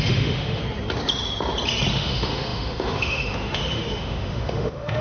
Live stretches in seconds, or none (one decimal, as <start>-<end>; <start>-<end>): 0.6-1.9